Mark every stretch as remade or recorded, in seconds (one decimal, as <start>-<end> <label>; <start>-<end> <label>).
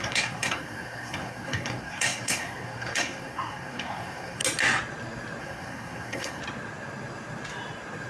0.0-4.4 remade; 4.4-5.4 recorded; 5.4-6.4 remade; 6.4-8.1 recorded